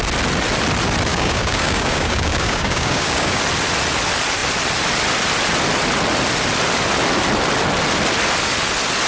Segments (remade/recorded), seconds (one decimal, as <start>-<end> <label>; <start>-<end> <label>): 0.0-1.1 recorded; 1.1-3.4 remade; 3.4-9.1 recorded

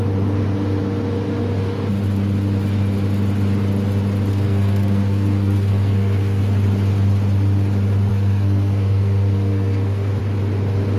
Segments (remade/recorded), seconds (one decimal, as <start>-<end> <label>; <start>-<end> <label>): 0.0-4.3 recorded; 4.3-6.4 remade; 6.4-8.1 recorded; 8.1-10.2 remade; 10.2-11.0 recorded